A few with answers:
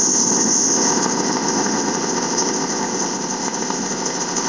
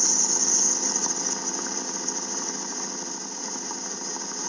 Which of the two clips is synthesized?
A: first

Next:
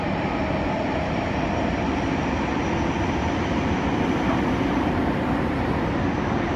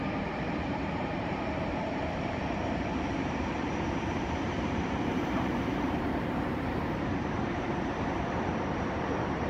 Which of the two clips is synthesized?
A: second